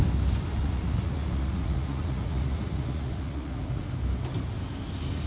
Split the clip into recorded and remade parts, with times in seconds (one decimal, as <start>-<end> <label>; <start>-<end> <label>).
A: 0.0-0.6 recorded; 0.6-3.8 remade; 3.8-5.3 recorded